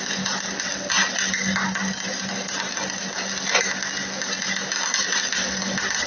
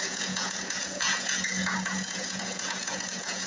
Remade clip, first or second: second